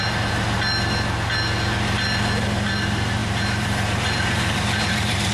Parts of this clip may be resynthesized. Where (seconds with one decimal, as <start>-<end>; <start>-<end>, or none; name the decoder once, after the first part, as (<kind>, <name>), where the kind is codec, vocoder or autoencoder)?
3.2-5.3 (vocoder, BigVGAN v2)